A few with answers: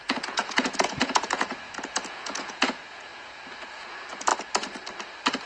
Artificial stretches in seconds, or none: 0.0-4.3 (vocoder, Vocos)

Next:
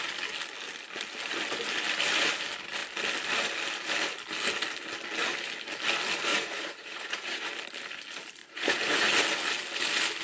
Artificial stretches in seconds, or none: 6.3-7.5 (vocoder, Vocos); 8.4-9.1

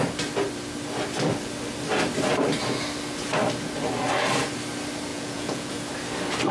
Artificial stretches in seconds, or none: 5.1-5.7 (vocoder, Vocos)

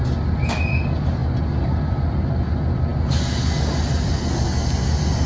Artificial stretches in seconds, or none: none